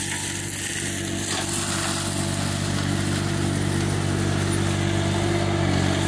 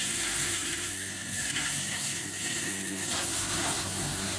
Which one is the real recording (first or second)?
first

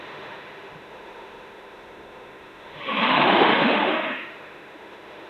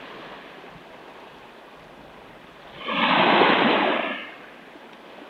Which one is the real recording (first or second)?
second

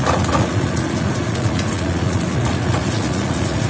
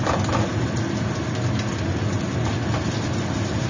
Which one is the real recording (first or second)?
second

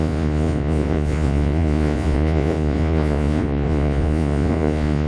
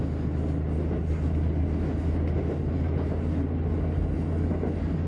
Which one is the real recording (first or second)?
second